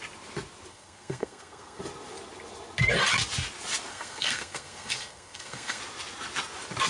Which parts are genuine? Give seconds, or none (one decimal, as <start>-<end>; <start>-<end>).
0.0-0.7; 1.8-3.9; 5.8-6.9